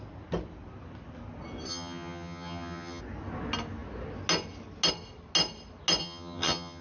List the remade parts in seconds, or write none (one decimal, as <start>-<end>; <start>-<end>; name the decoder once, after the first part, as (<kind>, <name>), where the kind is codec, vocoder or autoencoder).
1.7-3.0 (vocoder, HiFi-GAN); 6.0-6.8